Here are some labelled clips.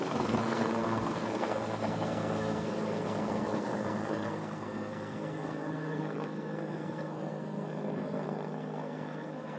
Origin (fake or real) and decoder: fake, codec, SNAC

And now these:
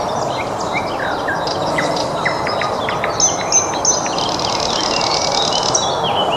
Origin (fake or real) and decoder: real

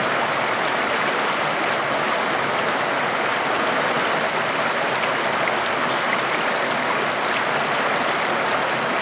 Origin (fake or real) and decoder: real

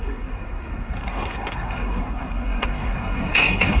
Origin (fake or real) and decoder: fake, codec, SNAC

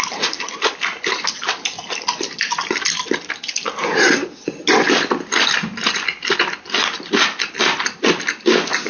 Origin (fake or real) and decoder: real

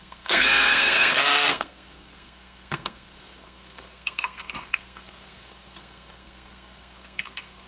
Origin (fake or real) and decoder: fake, codec, SNAC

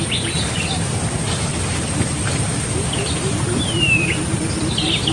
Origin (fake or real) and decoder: real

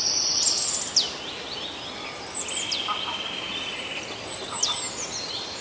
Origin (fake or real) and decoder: real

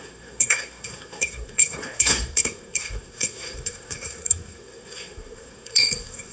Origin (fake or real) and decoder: fake, codec, SNAC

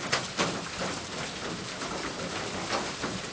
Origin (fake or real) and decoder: real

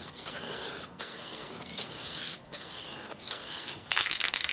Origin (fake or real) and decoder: fake, codec, SNAC